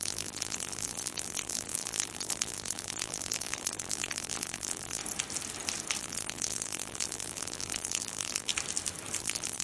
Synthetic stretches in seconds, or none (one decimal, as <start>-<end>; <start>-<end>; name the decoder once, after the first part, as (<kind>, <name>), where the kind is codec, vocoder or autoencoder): 0.0-5.0 (vocoder, BigVGAN v2); 6.0-8.5; 9.2-9.6

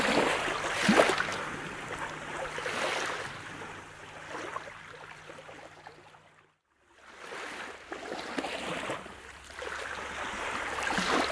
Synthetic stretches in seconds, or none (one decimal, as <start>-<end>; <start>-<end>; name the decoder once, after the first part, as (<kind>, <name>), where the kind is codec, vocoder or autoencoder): none

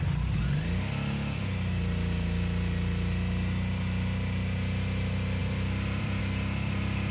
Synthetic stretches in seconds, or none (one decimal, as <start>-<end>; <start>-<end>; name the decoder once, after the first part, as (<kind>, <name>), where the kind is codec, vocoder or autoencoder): 5.4-6.2 (vocoder, BigVGAN v2)

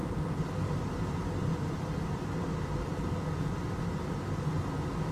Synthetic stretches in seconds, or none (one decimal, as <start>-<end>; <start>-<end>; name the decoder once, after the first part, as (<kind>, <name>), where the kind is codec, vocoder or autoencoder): 0.0-3.1 (vocoder, BigVGAN v2)